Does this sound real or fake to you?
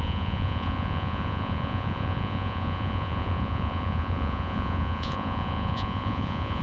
fake